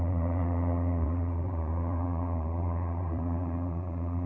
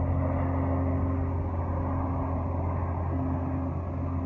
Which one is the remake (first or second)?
first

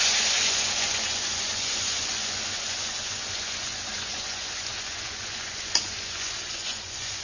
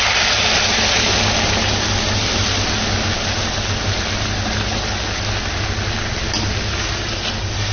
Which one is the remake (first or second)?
first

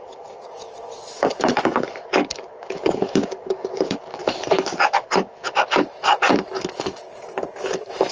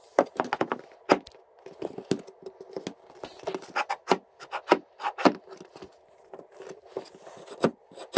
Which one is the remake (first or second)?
first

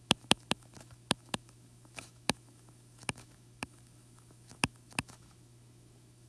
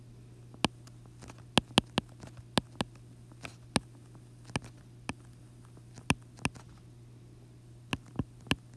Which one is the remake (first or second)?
first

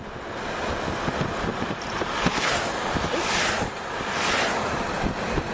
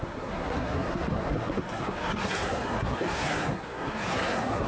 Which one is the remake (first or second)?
second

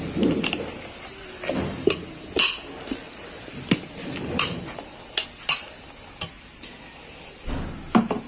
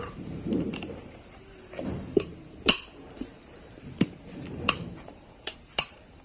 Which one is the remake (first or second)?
second